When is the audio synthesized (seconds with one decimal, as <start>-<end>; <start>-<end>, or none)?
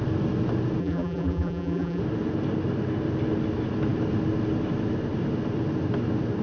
0.8-2.0